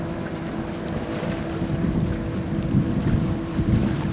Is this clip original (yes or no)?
no